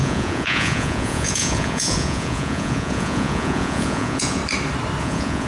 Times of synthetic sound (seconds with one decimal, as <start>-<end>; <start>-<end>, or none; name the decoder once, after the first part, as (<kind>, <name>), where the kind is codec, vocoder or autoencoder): 0.0-4.4 (vocoder, Vocos); 5.0-5.5